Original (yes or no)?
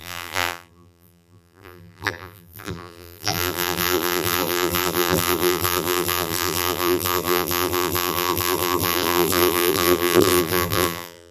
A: no